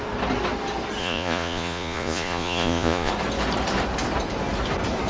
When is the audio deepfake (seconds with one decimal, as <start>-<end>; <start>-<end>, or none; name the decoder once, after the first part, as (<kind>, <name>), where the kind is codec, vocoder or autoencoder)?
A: 1.0-3.1 (vocoder, Vocos)